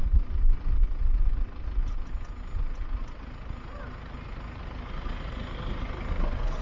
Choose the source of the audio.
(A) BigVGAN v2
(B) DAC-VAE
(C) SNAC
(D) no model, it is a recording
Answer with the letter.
D